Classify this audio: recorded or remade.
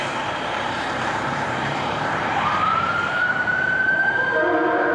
remade